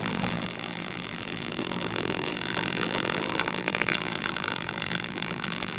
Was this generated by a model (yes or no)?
yes